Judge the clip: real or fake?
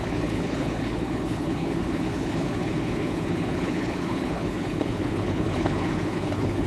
fake